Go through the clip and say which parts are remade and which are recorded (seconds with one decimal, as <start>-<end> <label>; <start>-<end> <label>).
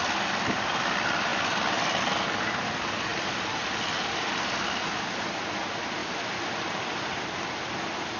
0.0-1.3 recorded; 1.3-2.3 remade; 2.3-3.1 recorded; 3.1-4.6 remade; 4.6-6.0 recorded; 6.0-6.5 remade; 6.5-8.2 recorded